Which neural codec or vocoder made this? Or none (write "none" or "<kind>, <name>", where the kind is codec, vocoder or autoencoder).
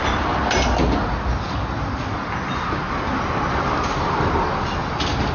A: none